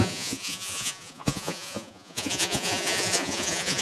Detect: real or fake fake